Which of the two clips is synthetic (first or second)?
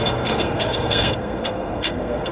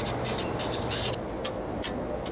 first